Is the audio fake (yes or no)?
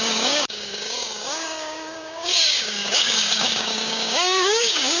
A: yes